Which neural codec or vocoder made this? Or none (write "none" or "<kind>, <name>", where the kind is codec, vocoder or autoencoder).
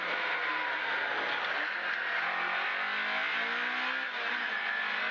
none